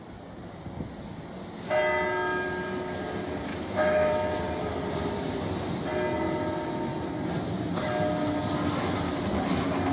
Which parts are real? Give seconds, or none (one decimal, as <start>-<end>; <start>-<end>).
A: 0.0-3.5; 4.1-9.9